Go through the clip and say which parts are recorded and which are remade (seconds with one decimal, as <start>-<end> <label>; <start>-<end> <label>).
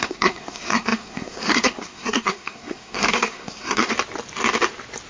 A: 0.0-3.9 remade; 3.9-5.1 recorded